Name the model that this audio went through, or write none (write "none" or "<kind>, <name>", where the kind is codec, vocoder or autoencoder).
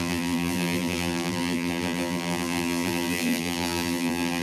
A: vocoder, BigVGAN v2